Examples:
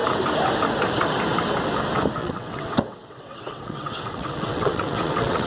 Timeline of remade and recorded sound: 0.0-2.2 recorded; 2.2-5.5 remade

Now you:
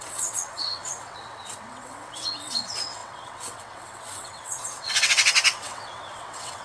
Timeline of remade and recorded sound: 0.0-6.6 remade

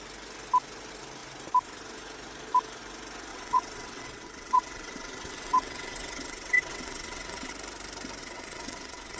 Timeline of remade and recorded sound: 0.0-3.3 recorded; 3.3-7.5 remade; 7.5-8.2 recorded; 8.2-9.2 remade

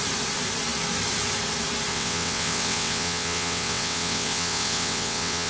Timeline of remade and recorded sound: 0.0-1.9 recorded; 1.9-5.5 remade

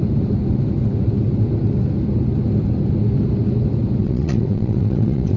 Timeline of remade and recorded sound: 0.0-4.0 recorded; 4.0-5.4 remade

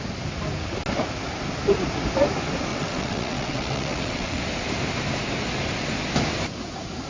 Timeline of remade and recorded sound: 0.0-2.7 recorded; 2.7-4.4 remade; 4.4-7.1 recorded

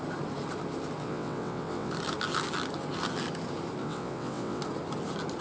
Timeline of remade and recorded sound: 0.0-1.0 recorded; 1.0-1.9 remade; 1.9-3.8 recorded; 3.8-4.6 remade; 4.6-5.4 recorded